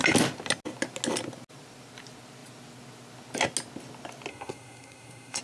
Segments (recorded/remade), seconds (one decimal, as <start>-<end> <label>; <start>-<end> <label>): 0.0-4.3 recorded; 4.3-5.4 remade